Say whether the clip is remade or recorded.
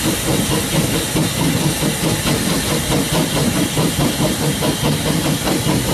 recorded